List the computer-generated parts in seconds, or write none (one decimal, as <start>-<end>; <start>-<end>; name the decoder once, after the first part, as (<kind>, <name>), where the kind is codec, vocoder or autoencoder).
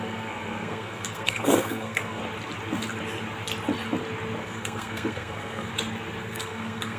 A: 0.0-2.2 (codec, SNAC); 4.4-5.7; 6.2-7.0